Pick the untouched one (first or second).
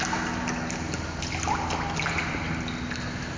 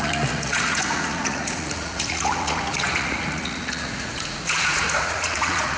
first